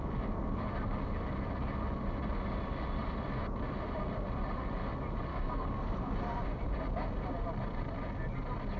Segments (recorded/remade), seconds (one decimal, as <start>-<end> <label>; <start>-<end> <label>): 0.0-5.3 recorded; 5.3-5.8 remade; 5.8-8.8 recorded